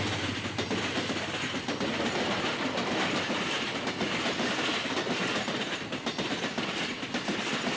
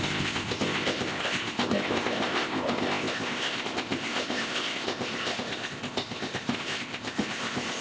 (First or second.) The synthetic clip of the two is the second